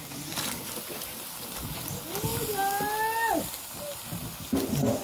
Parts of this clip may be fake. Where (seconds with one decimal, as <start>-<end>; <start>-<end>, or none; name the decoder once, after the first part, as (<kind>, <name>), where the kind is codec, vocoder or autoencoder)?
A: 1.1-1.6 (vocoder, BigVGAN v2)